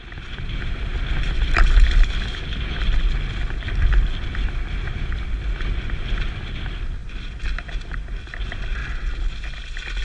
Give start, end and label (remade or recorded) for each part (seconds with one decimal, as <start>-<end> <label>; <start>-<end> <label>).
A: 0.0-10.0 recorded